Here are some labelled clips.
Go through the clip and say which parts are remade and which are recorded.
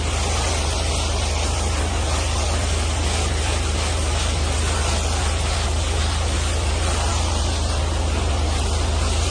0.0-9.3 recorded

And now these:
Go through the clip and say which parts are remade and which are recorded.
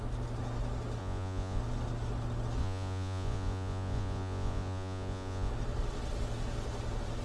0.0-1.0 recorded; 1.0-1.6 remade; 1.6-2.6 recorded; 2.6-5.5 remade; 5.5-7.2 recorded